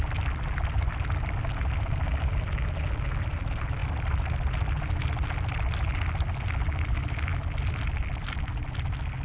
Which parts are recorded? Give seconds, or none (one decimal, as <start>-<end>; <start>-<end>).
0.0-9.2